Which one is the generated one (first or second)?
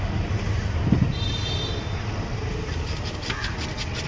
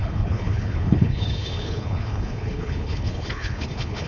second